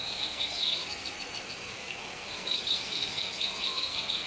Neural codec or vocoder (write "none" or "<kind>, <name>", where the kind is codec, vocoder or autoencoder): codec, SNAC